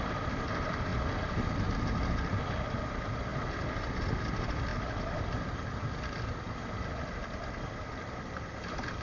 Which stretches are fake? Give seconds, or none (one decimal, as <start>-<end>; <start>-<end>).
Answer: 4.7-6.3

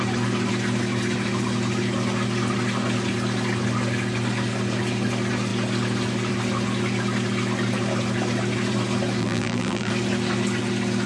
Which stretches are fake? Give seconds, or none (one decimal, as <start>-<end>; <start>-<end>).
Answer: 9.2-9.9

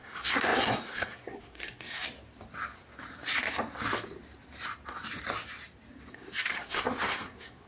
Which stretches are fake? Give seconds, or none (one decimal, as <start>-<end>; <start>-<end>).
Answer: 0.0-2.0; 6.1-7.7

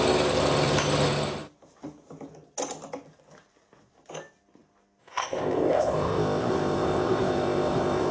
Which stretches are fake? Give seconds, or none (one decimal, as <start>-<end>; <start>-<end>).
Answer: 5.0-8.1

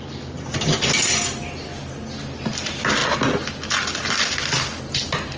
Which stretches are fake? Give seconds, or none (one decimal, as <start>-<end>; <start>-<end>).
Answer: none